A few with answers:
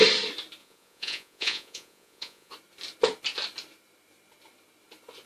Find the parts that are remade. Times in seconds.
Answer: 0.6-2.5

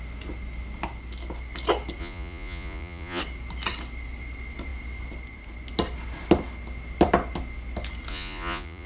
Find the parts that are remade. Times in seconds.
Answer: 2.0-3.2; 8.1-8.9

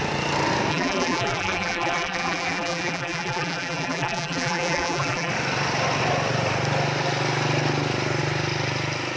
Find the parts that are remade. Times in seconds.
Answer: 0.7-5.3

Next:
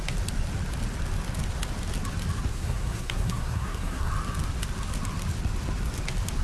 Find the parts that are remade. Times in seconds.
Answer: 2.5-4.1

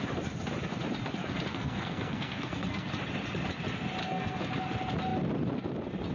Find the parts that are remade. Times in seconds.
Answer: 1.5-2.9; 4.0-4.5